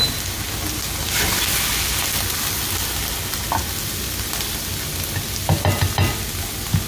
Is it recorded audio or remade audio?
recorded